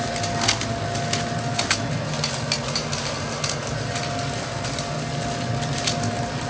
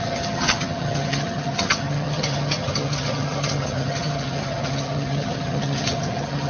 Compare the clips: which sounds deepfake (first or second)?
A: second